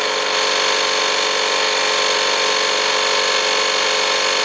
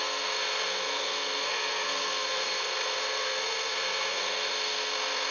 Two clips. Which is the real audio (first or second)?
first